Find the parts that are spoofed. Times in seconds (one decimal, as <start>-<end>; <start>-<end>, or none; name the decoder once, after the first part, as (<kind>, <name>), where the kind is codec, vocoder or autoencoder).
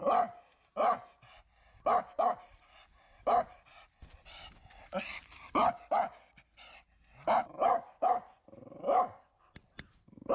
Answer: 5.1-5.7 (vocoder, BigVGAN v2)